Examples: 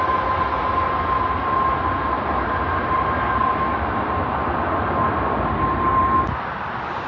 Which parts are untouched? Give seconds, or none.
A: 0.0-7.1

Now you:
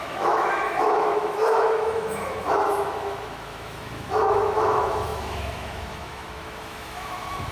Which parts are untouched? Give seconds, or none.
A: none